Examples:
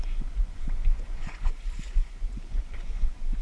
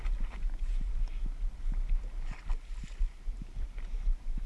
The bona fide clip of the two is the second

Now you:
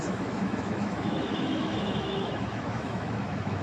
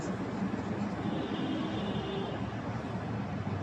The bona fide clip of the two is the second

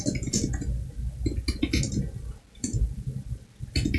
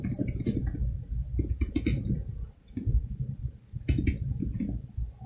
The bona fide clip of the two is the first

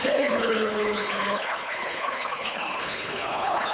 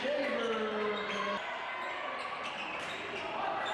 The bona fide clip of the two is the second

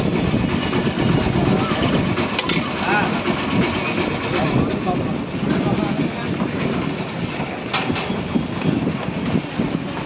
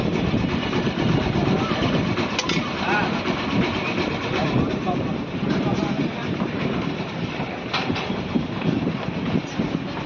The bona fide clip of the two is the first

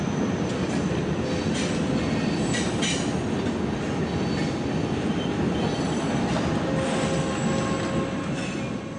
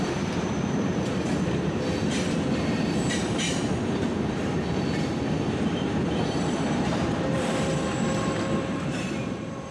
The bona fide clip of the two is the first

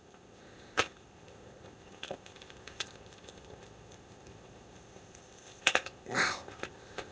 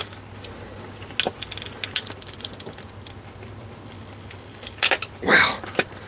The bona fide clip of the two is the second